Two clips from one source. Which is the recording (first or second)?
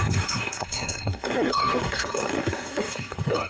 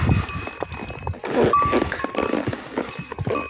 second